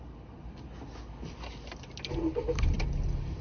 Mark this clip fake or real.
real